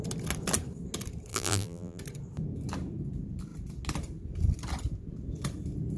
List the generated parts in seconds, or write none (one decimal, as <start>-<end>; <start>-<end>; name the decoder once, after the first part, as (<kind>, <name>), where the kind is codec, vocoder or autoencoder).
1.3-2.0 (vocoder, BigVGAN v2)